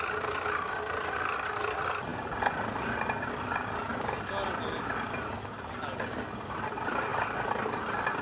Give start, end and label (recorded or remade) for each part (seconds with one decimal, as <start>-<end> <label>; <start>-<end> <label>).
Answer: 0.0-8.2 recorded